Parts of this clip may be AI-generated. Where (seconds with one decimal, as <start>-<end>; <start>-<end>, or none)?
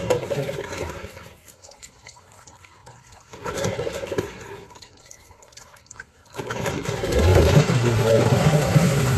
0.0-9.2